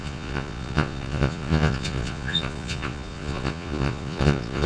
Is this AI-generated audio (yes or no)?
yes